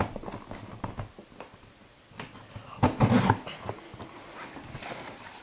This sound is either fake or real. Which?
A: real